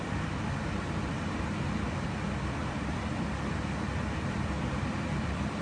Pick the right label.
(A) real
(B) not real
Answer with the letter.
A